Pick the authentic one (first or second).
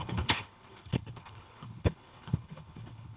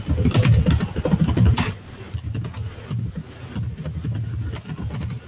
second